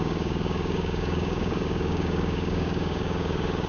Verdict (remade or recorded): remade